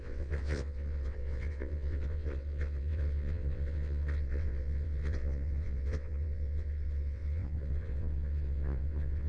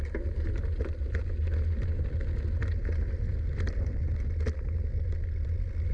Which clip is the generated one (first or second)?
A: first